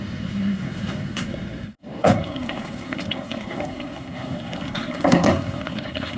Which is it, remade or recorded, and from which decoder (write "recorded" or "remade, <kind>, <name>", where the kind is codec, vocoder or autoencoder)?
remade, codec, SNAC